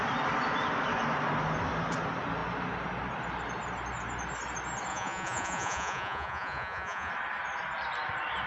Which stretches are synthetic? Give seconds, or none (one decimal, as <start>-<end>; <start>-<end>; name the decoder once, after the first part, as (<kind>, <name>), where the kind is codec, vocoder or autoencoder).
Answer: 4.9-7.1 (vocoder, Vocos)